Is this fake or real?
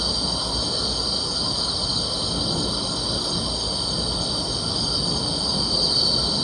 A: real